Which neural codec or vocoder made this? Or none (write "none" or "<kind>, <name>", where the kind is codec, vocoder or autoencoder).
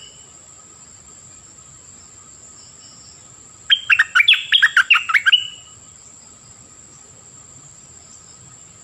none